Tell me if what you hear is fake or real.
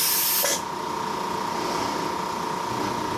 real